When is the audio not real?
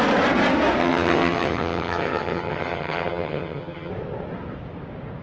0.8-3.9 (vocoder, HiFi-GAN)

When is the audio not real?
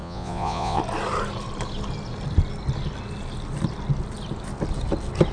0.0-0.8 (vocoder, Vocos)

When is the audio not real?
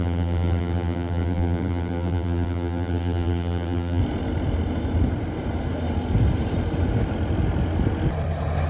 0.0-4.0 (vocoder, BigVGAN v2)